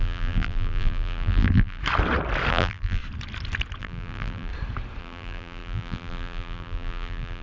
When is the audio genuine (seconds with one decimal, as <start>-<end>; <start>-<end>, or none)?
1.8-2.5; 3.0-3.8; 4.5-5.0